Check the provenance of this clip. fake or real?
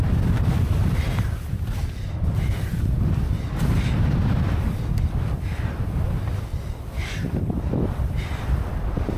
fake